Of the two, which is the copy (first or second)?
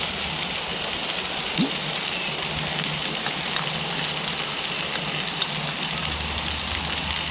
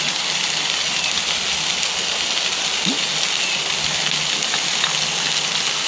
first